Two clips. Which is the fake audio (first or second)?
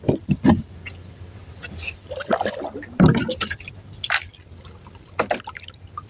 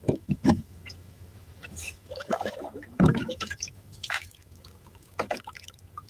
second